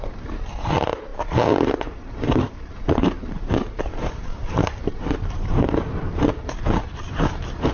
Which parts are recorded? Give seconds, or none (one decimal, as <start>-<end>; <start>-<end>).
0.0-1.1; 4.8-7.7